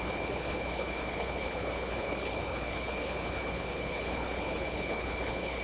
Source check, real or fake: fake